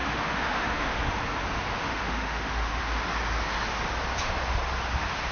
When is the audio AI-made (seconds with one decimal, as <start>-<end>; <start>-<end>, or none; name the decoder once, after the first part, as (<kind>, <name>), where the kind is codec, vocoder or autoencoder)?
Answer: 0.0-1.0 (autoencoder, DAC-VAE); 1.8-2.8